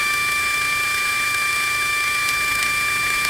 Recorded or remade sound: remade